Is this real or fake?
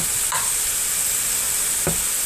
real